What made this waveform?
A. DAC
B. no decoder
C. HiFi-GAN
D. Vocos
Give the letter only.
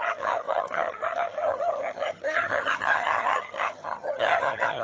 C